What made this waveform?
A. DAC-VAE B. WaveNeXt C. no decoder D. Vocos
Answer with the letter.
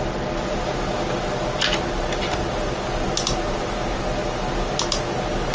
C